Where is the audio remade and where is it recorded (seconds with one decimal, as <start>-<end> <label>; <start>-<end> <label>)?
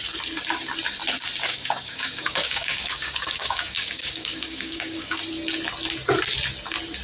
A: 0.0-1.4 recorded; 1.4-5.2 remade; 5.2-7.0 recorded